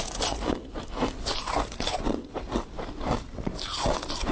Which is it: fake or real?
real